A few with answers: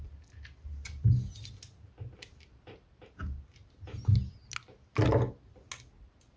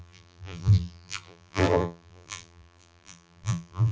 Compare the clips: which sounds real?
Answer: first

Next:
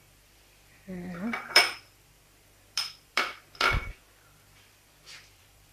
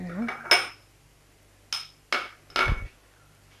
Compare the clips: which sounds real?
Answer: second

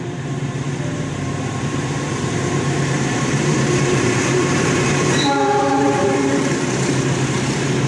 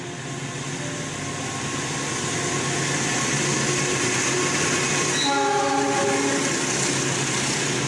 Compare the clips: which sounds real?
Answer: second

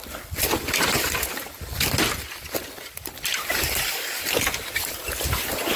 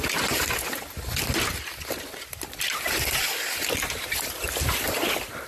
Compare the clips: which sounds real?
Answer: second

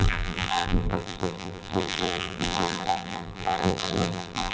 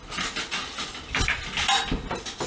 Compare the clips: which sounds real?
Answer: second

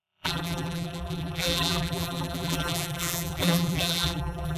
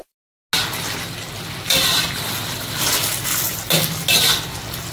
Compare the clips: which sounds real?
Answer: second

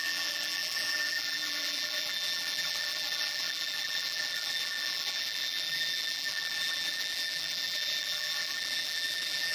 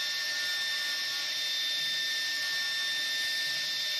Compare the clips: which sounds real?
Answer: second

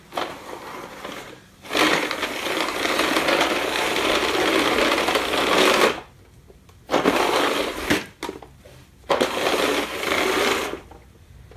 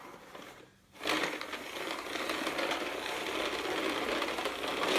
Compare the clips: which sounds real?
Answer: second